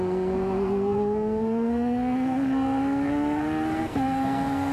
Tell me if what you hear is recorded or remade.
remade